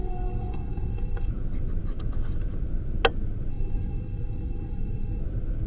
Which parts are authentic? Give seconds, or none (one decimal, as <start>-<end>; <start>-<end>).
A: 1.3-3.5; 5.2-5.7